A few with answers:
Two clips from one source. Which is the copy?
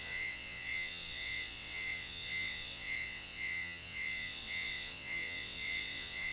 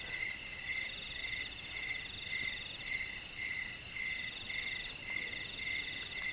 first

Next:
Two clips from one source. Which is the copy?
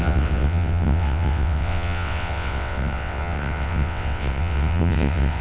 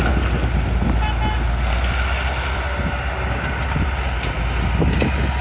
first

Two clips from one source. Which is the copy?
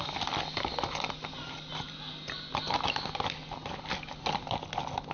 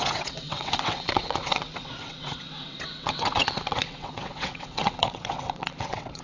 second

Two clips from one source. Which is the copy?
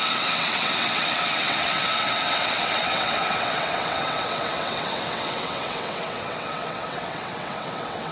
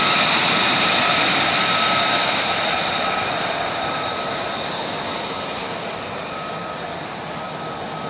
first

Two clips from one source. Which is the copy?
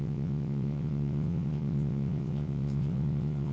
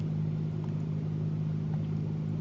first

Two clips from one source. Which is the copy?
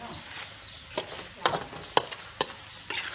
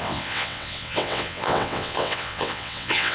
second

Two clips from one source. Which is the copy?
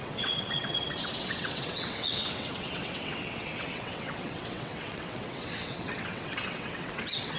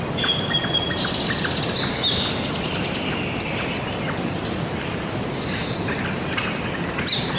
first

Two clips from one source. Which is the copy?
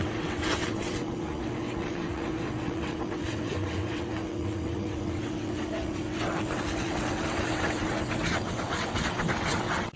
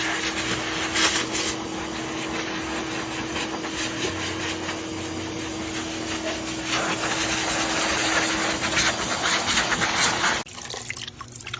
first